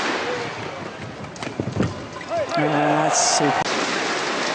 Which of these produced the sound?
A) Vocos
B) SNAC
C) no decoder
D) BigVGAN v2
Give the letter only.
C